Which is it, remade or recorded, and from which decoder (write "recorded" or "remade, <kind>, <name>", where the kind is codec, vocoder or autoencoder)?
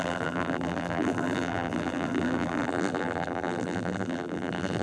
remade, vocoder, BigVGAN v2